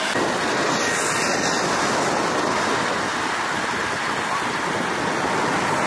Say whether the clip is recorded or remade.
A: recorded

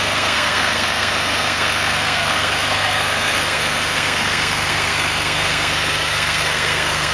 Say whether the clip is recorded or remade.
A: remade